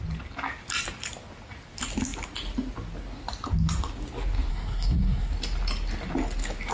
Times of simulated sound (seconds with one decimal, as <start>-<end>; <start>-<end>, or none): 4.5-5.3